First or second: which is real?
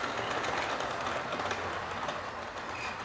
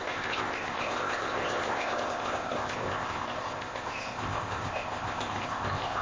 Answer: first